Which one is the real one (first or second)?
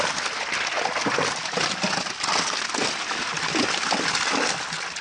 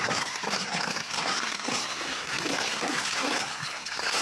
first